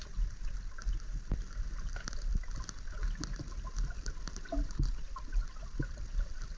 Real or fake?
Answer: real